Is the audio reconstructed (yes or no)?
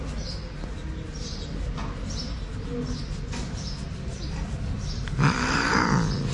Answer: no